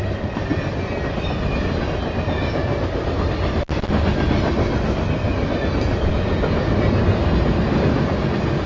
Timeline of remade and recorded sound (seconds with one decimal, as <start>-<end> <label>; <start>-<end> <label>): 0.0-8.7 recorded